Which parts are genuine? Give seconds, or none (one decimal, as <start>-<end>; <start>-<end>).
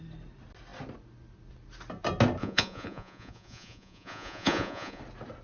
0.0-2.4; 5.0-5.4